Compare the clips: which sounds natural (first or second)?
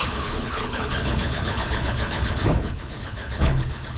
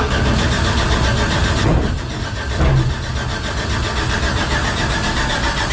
second